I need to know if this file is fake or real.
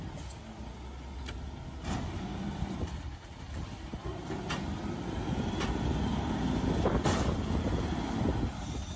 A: real